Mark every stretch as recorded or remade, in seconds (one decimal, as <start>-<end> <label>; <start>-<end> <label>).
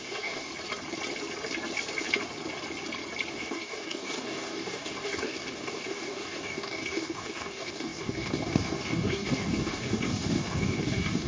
0.0-0.5 remade; 0.5-3.3 recorded; 3.3-11.3 remade